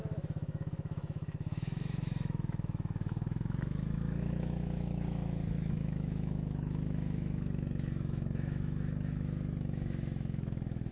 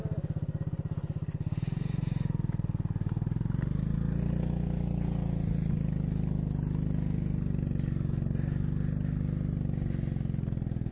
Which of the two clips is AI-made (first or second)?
first